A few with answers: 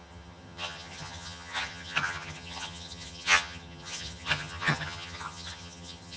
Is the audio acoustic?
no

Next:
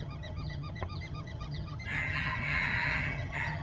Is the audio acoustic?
no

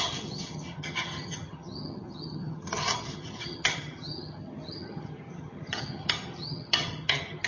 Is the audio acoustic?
no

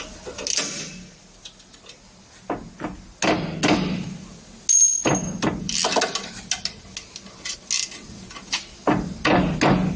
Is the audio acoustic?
yes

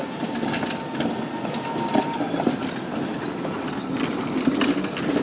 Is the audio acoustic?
yes